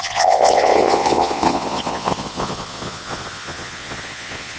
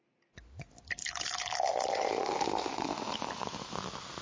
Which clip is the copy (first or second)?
first